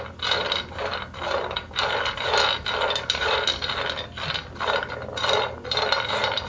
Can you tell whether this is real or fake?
real